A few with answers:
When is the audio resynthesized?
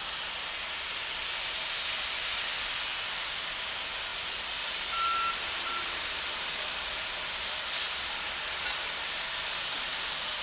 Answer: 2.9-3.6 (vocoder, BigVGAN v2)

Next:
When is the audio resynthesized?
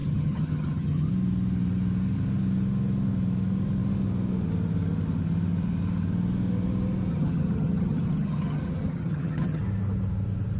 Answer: 0.0-1.1 (vocoder, HiFi-GAN); 7.1-9.6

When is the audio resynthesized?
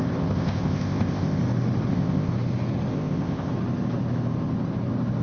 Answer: 0.0-1.4 (codec, ZipCodec); 1.9-2.3; 2.9-3.5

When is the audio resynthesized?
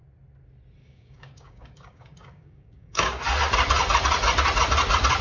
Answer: 0.8-3.2 (codec, DAC)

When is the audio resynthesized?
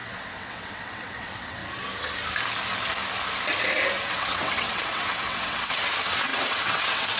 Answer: 0.0-1.6 (vocoder, WaveNeXt); 4.0-7.2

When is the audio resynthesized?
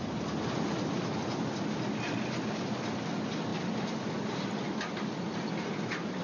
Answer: none